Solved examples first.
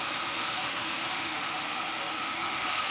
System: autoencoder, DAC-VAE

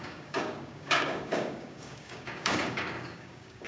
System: codec, DAC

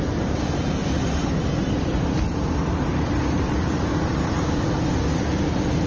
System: none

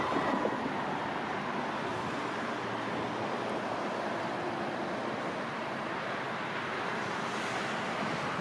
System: none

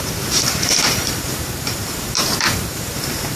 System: vocoder, BigVGAN v2